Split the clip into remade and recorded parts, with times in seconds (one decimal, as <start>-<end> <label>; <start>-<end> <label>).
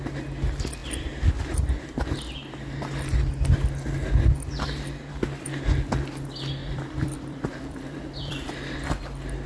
0.0-6.6 recorded; 6.6-8.5 remade; 8.5-9.5 recorded